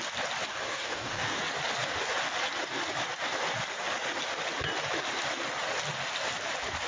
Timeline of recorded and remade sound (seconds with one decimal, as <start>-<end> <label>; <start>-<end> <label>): 0.0-0.5 recorded; 0.5-1.4 remade; 1.4-6.9 recorded